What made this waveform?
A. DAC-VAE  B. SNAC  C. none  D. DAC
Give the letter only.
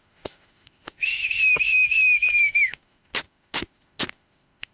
A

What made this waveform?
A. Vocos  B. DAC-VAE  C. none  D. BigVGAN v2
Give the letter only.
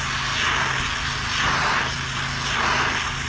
C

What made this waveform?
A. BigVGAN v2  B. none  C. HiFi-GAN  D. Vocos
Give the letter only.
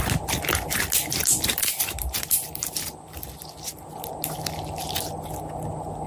B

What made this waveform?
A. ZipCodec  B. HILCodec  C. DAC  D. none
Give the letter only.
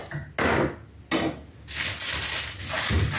D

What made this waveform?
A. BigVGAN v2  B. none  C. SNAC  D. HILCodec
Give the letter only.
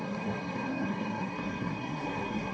C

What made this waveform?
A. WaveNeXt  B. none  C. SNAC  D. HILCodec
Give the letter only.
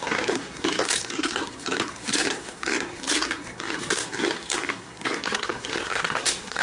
C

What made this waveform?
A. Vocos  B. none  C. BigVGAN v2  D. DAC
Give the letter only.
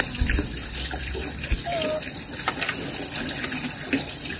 C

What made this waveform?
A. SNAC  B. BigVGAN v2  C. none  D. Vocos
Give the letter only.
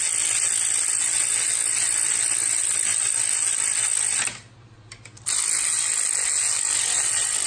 C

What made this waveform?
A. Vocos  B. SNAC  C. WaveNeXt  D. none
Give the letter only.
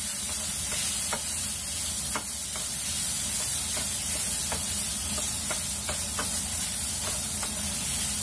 D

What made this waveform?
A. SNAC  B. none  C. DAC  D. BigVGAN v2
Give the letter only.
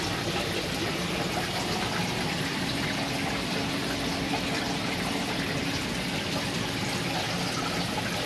D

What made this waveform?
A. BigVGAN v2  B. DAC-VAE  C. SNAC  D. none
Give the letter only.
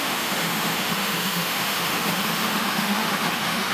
B